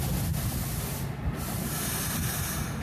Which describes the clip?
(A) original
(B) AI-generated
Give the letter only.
A